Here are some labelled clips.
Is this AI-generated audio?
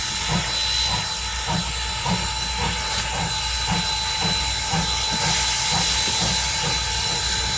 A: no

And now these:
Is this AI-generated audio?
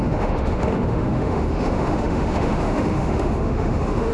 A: yes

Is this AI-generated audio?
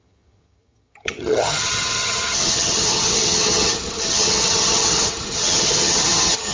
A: yes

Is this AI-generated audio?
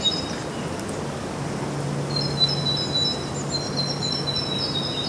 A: no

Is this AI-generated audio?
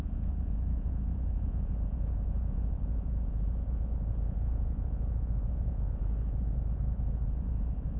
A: yes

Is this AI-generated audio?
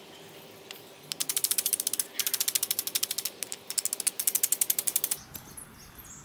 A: no